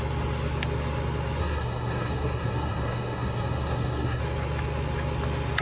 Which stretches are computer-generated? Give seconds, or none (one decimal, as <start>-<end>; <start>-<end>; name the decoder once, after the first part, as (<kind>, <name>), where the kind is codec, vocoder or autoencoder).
1.4-4.2 (codec, SNAC)